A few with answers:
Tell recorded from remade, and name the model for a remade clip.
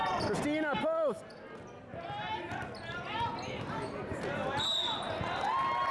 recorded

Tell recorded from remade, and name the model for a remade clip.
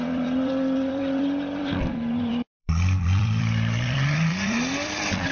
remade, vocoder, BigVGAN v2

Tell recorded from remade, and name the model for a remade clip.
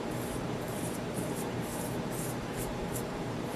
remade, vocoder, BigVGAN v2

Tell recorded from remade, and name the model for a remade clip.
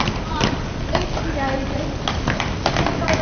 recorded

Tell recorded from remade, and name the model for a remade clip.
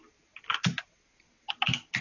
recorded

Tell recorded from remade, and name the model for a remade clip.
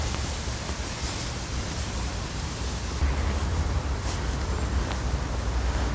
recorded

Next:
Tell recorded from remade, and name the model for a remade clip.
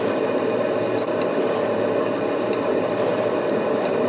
recorded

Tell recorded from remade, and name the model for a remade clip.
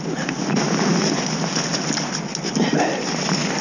recorded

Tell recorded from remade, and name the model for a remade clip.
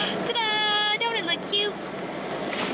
recorded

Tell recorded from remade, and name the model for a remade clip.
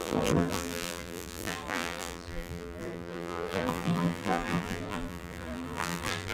remade, vocoder, BigVGAN v2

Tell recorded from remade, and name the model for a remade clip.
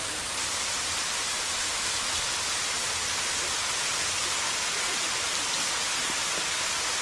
recorded